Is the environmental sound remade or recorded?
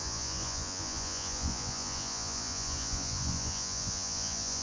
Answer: remade